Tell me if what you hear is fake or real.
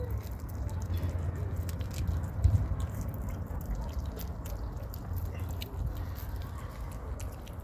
real